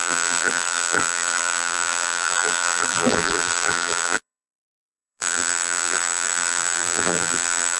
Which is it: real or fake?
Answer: fake